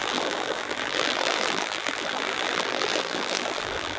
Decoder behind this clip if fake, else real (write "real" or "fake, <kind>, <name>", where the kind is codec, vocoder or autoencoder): fake, vocoder, BigVGAN v2